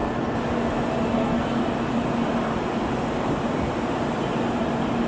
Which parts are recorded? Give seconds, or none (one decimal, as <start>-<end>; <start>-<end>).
0.0-1.1; 1.6-5.1